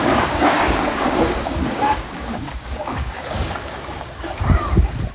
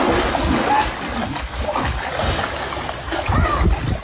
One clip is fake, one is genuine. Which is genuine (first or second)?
second